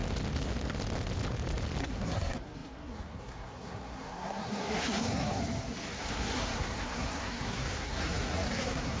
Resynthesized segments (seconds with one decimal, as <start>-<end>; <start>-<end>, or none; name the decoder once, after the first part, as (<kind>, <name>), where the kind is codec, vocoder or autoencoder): 1.8-5.4 (codec, SNAC); 6.0-9.0